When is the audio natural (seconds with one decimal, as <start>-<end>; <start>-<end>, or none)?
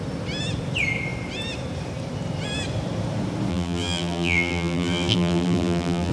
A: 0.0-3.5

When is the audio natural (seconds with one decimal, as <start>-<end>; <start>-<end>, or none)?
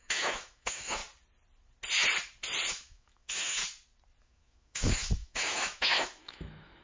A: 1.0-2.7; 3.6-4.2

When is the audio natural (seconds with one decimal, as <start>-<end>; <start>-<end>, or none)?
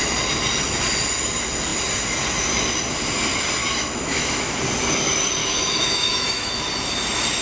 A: 0.0-3.6; 4.6-5.4; 6.6-7.4